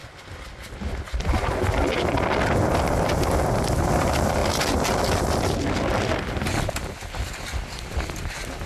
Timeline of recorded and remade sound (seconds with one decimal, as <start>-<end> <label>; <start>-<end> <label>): 0.0-3.9 recorded; 3.9-4.4 remade; 4.4-8.7 recorded